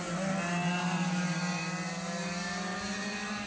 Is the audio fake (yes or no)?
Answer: no